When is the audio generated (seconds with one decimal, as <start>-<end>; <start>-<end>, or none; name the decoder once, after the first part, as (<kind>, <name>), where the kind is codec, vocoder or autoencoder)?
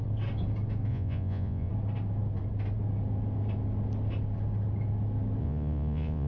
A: 0.9-1.7 (vocoder, Vocos); 5.4-6.3